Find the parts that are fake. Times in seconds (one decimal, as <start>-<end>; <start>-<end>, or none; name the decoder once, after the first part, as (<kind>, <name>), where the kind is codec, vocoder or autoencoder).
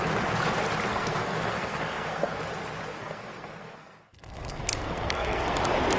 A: 0.9-2.4 (codec, SNAC); 2.9-5.6